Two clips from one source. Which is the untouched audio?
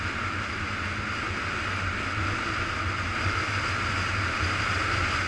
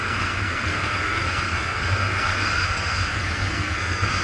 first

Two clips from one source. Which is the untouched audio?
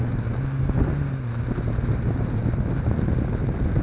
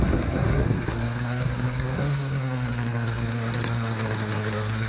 first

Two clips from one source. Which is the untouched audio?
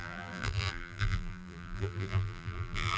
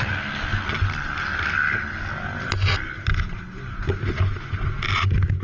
second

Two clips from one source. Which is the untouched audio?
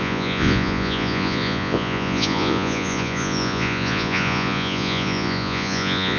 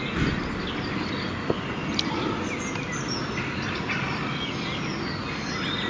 second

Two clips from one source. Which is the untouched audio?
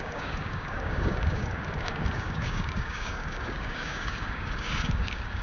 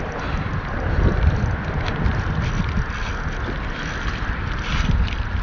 second